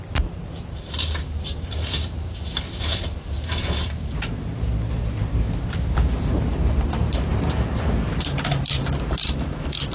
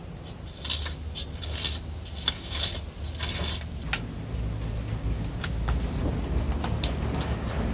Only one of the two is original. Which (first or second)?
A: second